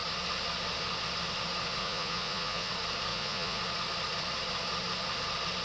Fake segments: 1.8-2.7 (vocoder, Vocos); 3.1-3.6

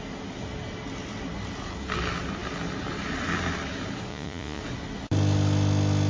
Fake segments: 4.1-4.6 (vocoder, Vocos)

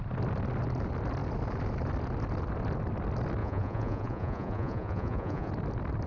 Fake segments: 3.4-5.5 (vocoder, Vocos)

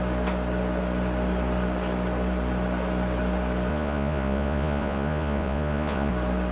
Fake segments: 3.7-6.1 (vocoder, Vocos)

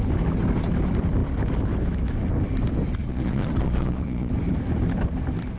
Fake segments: 3.0-4.3 (vocoder, Vocos)

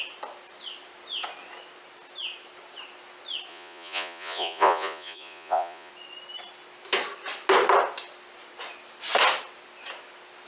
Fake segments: 3.5-5.9 (vocoder, Vocos)

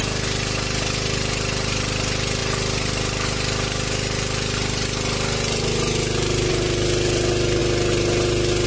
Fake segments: none